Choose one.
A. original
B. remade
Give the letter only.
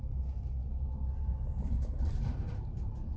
A